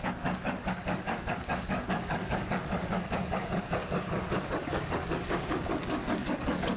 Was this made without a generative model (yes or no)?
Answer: no